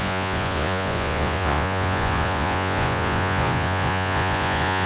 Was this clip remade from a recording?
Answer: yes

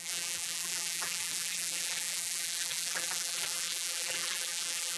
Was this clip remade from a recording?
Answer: yes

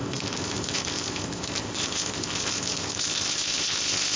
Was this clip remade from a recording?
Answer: yes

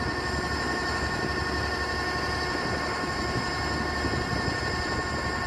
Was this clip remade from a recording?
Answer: no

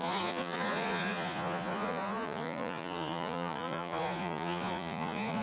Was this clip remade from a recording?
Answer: yes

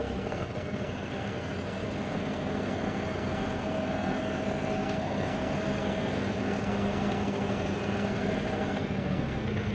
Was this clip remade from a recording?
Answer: yes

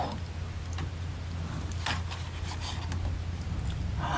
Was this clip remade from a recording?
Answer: no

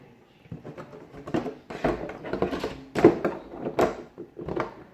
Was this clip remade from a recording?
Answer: yes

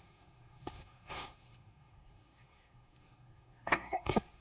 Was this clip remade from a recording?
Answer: yes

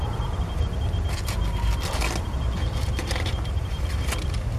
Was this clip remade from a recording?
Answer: no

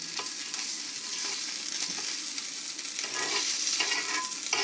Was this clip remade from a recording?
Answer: no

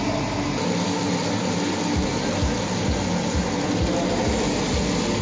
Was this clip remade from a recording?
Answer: no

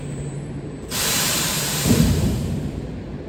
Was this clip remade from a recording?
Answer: yes